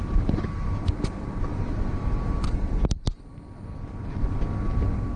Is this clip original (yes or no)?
yes